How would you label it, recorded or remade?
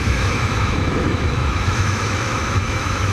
remade